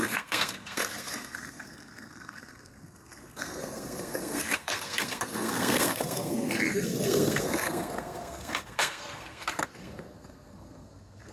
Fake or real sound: fake